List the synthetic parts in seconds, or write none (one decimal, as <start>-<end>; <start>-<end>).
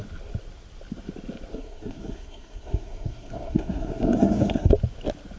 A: 1.5-4.7